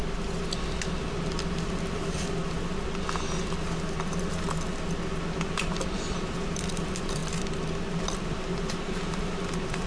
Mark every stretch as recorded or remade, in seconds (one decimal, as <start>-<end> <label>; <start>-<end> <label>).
0.0-1.0 recorded; 1.0-2.4 remade; 2.4-5.2 recorded; 5.2-7.2 remade; 7.2-8.0 recorded; 8.0-9.9 remade